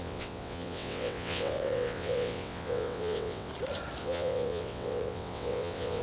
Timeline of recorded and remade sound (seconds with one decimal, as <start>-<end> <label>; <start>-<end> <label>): 0.0-3.5 remade; 3.5-4.0 recorded; 4.0-6.0 remade